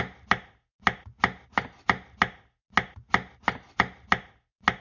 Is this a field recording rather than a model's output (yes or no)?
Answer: yes